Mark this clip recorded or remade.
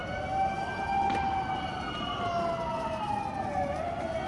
recorded